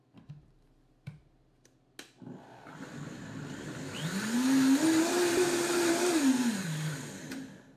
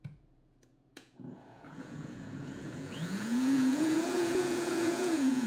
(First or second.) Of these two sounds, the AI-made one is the second